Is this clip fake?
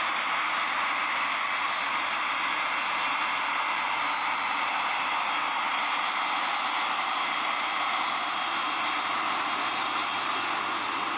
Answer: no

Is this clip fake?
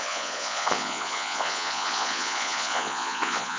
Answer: yes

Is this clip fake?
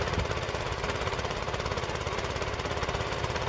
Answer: yes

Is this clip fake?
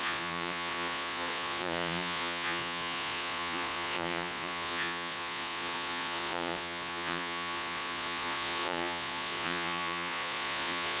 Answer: yes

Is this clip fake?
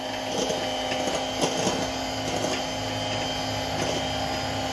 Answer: no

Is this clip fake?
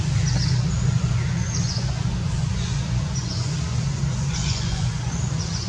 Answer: yes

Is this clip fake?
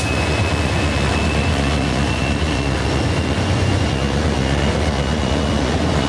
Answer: yes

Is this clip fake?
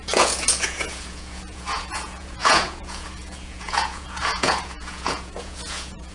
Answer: yes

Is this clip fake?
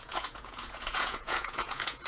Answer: yes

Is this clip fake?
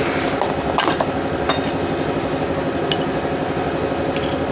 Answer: no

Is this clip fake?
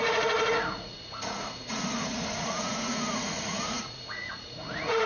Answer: yes